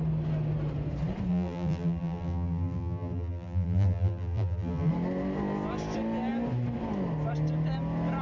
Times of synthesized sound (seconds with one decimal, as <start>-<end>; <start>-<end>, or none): 1.3-4.9